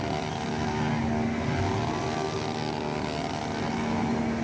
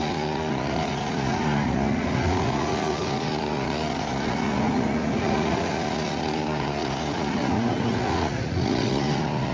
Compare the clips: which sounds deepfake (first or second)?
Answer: second